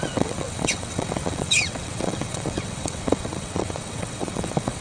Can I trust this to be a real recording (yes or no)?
no